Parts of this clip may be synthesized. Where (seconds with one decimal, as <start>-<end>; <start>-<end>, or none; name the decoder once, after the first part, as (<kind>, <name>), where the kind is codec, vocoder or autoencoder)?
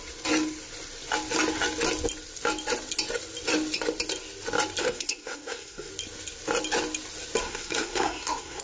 4.8-5.9 (codec, SNAC); 7.4-8.6